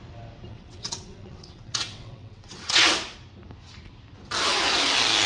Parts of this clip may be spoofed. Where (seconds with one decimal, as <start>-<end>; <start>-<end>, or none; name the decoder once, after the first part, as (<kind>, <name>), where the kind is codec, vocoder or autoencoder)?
0.5-2.9 (vocoder, WaveNeXt)